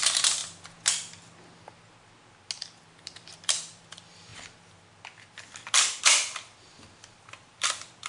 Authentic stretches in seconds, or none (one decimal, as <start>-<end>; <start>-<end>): 0.4-2.6; 4.3-6.0